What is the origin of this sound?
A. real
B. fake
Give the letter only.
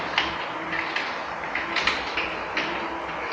A